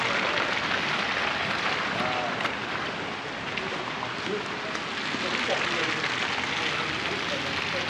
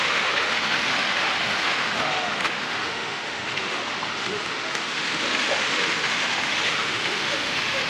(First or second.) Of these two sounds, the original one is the first